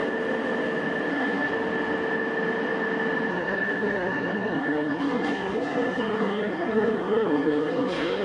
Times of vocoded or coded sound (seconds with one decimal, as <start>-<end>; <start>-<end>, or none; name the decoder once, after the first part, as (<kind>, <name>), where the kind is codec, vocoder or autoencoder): 1.1-1.5 (codec, SNAC); 3.3-8.2

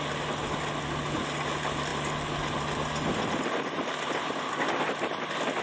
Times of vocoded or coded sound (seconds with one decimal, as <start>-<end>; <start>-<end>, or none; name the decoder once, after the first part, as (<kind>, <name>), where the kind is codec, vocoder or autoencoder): none

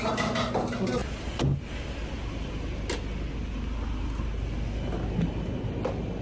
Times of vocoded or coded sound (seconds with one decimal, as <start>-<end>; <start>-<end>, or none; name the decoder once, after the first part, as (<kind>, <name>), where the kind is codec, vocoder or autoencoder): none

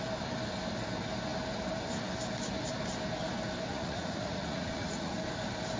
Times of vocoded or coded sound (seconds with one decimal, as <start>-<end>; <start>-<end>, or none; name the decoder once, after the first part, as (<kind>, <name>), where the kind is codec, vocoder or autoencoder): 3.7-5.1 (vocoder, Vocos)

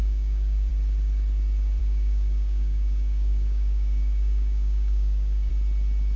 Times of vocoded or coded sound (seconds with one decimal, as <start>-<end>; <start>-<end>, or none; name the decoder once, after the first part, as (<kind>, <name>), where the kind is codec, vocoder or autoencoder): 0.0-0.7 (codec, DAC); 1.8-5.5

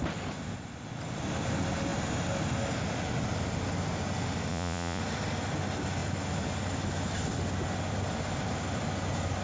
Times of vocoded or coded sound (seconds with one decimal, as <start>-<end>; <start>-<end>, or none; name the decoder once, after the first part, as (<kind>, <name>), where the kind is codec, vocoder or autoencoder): 4.5-5.0 (vocoder, Vocos)